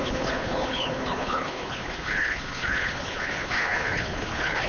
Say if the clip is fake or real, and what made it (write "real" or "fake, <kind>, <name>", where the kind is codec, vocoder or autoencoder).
fake, codec, HILCodec